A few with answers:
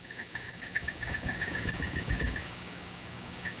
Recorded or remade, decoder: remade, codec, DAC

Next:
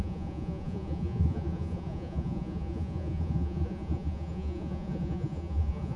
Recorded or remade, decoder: remade, vocoder, Vocos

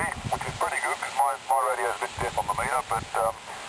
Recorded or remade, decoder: recorded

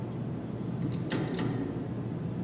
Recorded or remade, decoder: recorded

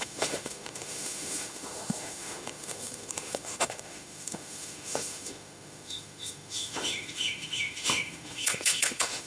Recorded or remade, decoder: remade, autoencoder, DAC-VAE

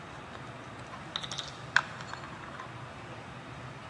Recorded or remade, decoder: recorded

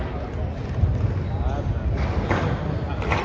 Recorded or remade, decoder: recorded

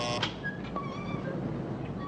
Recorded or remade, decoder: recorded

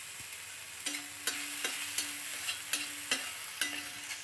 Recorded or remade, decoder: recorded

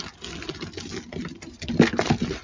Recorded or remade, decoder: recorded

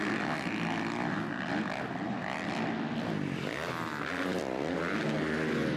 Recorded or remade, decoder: recorded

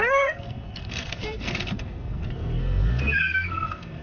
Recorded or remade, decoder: remade, codec, SNAC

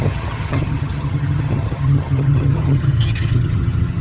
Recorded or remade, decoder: remade, vocoder, HiFi-GAN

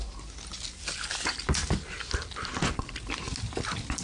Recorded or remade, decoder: recorded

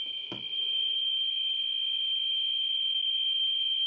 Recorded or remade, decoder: recorded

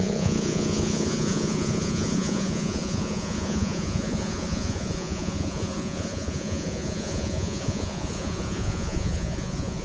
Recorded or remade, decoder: remade, vocoder, Vocos